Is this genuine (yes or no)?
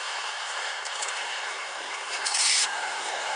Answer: no